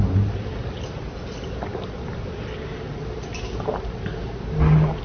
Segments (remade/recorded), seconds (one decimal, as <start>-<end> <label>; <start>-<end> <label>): 0.0-5.0 recorded